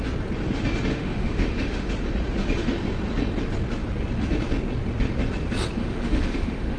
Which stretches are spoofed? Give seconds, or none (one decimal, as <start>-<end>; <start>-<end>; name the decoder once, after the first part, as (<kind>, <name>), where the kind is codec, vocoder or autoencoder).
0.9-1.9 (autoencoder, DAC-VAE); 5.8-6.8